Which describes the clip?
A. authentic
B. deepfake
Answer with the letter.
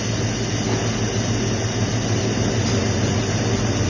A